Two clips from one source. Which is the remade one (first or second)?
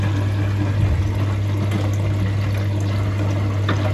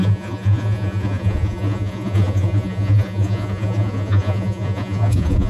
second